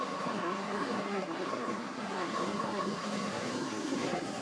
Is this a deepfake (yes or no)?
yes